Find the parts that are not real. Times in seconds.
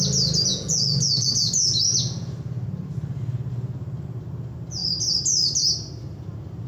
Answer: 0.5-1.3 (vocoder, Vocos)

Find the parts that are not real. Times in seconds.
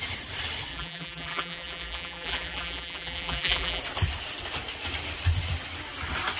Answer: 0.7-3.8 (vocoder, BigVGAN v2)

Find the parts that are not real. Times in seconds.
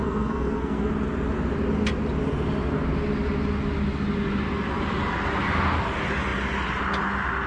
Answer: 0.0-0.9 (codec, SNAC)